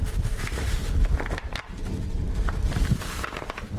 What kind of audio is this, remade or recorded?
recorded